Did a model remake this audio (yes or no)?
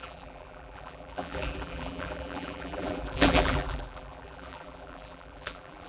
yes